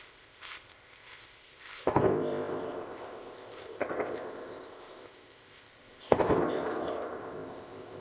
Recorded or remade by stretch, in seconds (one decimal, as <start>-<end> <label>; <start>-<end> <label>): 0.0-8.0 remade